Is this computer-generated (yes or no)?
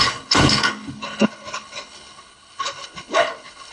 yes